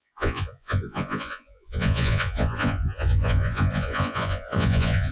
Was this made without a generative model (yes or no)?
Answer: no